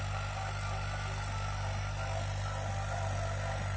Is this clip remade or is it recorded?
recorded